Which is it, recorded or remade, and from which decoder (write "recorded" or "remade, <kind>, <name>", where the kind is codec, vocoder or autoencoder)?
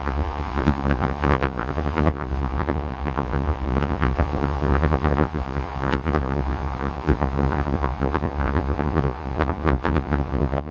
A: remade, vocoder, Vocos